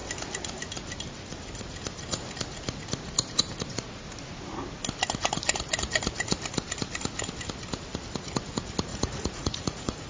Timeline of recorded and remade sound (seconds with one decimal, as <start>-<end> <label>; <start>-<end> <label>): 0.0-8.9 recorded; 8.9-10.1 remade